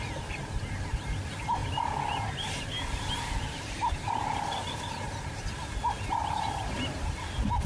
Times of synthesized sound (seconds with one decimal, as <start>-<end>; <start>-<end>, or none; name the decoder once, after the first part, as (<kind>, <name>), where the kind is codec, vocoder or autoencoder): 1.6-4.3 (vocoder, BigVGAN v2); 6.2-7.7